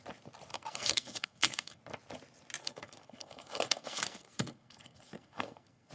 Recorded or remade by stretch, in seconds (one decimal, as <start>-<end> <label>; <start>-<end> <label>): 0.0-0.5 recorded; 0.5-1.8 remade; 1.8-2.6 recorded; 2.6-5.9 remade